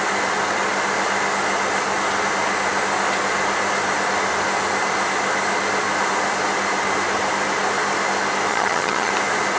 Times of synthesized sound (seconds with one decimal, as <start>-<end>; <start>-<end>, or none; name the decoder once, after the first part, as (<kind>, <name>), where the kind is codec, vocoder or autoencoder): 8.5-9.1 (vocoder, HiFi-GAN)